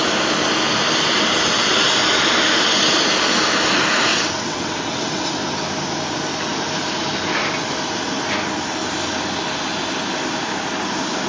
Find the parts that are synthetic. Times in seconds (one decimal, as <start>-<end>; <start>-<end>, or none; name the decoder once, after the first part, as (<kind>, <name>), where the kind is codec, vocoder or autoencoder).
4.1-5.2 (vocoder, WaveNeXt)